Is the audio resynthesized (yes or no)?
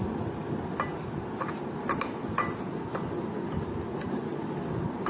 no